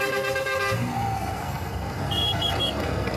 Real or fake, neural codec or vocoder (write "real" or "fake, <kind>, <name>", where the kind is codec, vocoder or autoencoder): fake, codec, SNAC